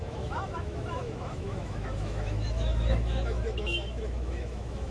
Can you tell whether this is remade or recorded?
remade